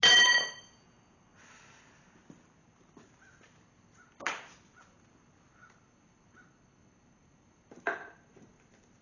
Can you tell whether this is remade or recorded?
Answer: recorded